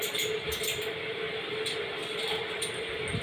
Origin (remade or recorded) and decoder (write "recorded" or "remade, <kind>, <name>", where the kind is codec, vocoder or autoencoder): recorded